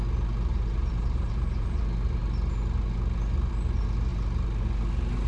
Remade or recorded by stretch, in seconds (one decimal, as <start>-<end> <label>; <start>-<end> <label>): 0.0-0.5 recorded; 0.5-1.8 remade; 1.8-5.3 recorded